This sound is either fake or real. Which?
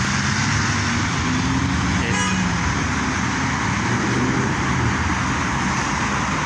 real